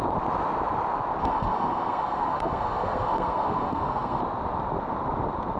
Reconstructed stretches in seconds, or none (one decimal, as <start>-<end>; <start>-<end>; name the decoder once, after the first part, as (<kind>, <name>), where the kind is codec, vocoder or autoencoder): 1.2-4.2 (codec, SNAC)